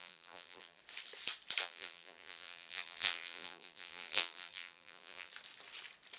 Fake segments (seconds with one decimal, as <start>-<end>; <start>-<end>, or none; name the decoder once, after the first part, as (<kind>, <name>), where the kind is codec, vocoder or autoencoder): 0.0-0.8 (vocoder, BigVGAN v2); 1.6-5.3